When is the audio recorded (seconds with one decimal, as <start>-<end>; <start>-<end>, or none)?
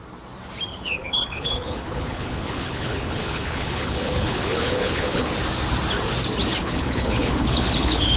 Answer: 0.0-0.7; 5.3-6.6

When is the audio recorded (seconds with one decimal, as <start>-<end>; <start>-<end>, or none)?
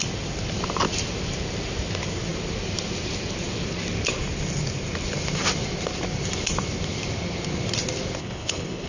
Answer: 0.0-8.2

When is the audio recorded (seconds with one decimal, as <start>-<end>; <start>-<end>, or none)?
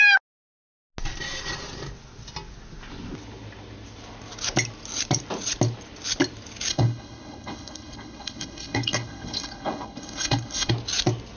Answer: 0.0-6.7; 10.7-11.4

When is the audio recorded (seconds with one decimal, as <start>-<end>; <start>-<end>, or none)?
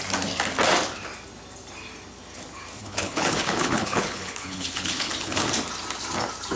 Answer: 0.0-2.8; 5.5-6.6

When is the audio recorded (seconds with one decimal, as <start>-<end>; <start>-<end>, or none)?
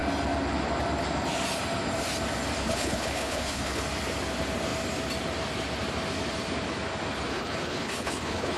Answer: 0.0-2.6; 3.8-7.3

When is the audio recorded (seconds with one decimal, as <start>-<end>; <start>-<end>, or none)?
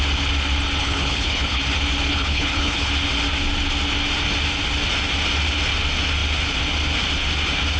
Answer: 0.0-0.8; 1.6-2.1; 2.9-7.8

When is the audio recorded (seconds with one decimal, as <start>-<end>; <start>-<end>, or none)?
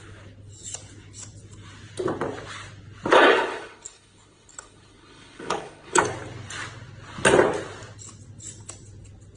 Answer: 0.0-3.1; 6.0-9.4